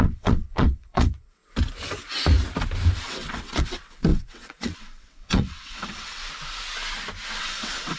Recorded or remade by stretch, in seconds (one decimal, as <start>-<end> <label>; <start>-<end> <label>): 0.0-1.4 remade; 1.4-3.0 recorded; 3.0-6.2 remade; 6.2-7.4 recorded; 7.4-8.0 remade

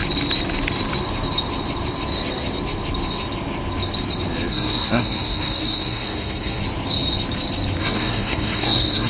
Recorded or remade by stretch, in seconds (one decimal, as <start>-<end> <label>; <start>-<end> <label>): 0.0-4.5 recorded; 4.5-6.6 remade; 6.6-7.8 recorded; 7.8-9.1 remade